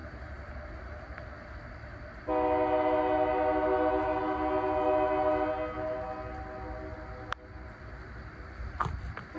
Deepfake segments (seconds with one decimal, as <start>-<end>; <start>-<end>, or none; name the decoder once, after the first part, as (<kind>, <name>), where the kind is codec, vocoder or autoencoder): 0.0-0.5 (vocoder, BigVGAN v2)